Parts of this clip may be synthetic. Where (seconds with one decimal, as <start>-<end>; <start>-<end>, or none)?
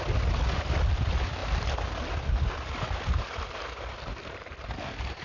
none